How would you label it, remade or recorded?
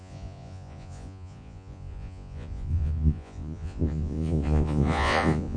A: remade